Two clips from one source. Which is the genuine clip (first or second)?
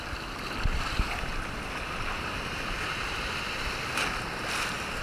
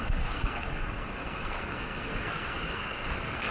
first